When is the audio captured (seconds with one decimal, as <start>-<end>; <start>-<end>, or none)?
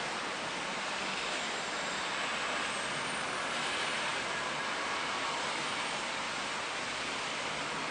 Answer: 0.0-7.9